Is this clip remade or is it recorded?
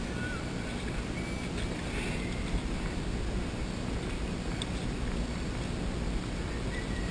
recorded